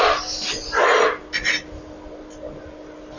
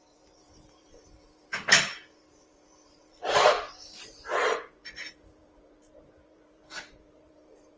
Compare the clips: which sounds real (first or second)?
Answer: first